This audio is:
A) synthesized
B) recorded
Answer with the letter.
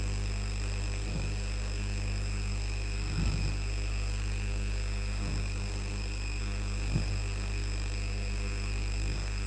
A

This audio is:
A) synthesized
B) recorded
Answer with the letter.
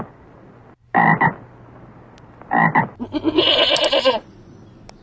B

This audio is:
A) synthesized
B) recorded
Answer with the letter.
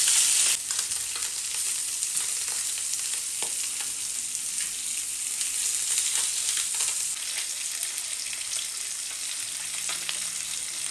B